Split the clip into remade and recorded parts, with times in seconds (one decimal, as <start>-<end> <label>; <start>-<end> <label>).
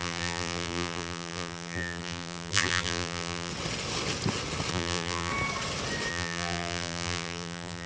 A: 0.0-3.5 remade; 3.5-4.7 recorded; 4.7-5.3 remade; 5.3-6.1 recorded; 6.1-7.9 remade